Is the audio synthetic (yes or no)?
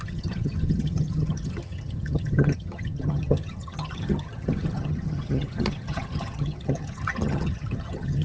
yes